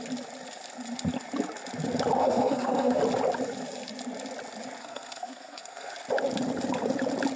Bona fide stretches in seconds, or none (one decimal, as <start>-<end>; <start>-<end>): 0.0-2.2; 3.0-4.8; 5.9-7.4